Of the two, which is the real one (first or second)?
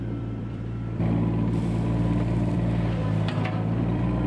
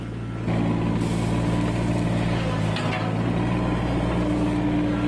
second